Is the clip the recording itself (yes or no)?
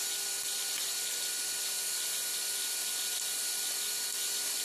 yes